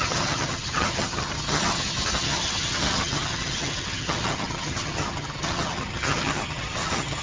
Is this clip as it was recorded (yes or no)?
no